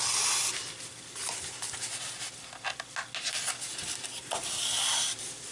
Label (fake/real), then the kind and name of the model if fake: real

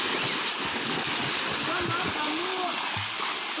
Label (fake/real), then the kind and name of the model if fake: real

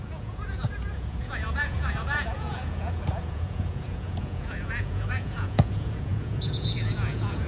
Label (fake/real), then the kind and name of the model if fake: fake, vocoder, Vocos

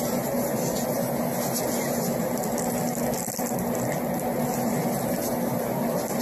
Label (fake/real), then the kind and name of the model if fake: real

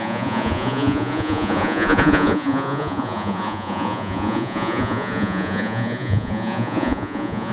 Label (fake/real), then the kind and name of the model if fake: fake, vocoder, Vocos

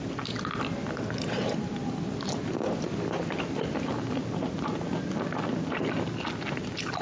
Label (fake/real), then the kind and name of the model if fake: real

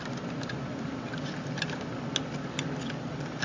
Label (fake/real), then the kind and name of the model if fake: real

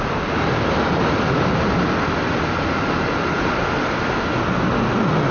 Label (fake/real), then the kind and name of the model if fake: real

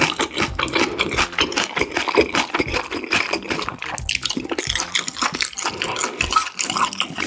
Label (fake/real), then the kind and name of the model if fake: real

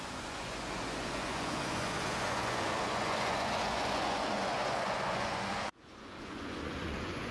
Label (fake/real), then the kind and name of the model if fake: fake, vocoder, Vocos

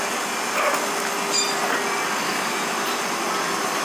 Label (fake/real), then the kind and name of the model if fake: real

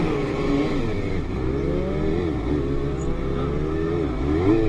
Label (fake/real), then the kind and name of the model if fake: real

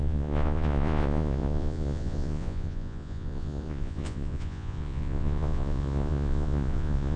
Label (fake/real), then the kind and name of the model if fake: fake, vocoder, Vocos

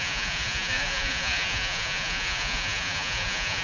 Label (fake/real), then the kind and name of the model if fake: fake, vocoder, Vocos